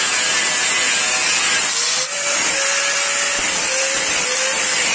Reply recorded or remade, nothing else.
recorded